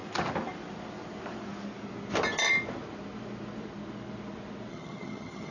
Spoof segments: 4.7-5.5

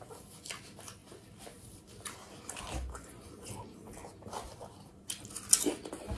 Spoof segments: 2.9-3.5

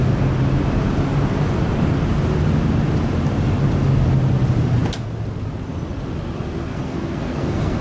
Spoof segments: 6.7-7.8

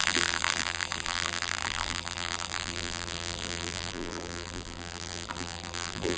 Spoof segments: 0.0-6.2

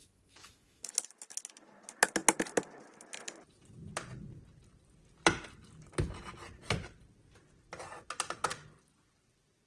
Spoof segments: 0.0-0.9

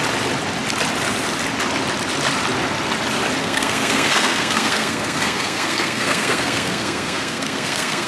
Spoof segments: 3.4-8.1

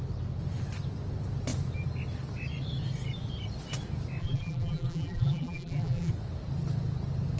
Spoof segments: 4.2-6.1

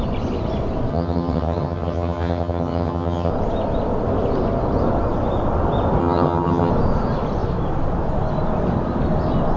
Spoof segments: 0.9-3.3; 6.0-6.7